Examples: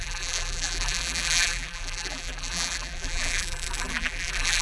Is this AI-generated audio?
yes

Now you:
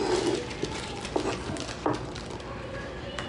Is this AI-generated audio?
no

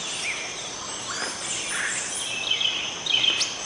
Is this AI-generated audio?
no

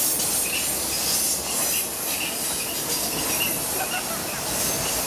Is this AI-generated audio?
no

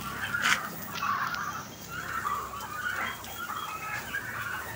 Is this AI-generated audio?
yes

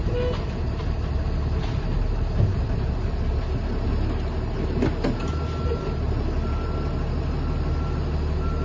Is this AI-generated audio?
no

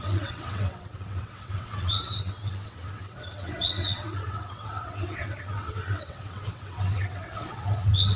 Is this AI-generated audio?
yes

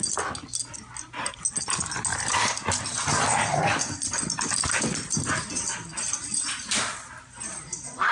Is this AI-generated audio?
no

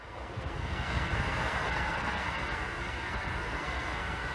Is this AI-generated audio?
yes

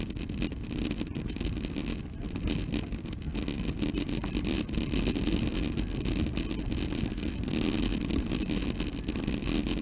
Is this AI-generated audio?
no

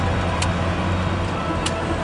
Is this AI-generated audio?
no